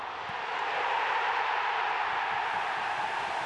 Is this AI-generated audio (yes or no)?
no